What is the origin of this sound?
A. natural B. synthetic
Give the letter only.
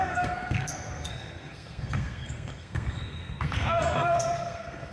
B